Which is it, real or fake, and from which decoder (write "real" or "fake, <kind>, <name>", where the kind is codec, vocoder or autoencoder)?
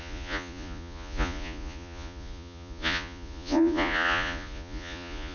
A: fake, vocoder, Vocos